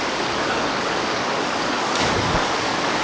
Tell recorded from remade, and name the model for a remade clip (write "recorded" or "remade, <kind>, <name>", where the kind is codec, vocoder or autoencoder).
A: remade, codec, DAC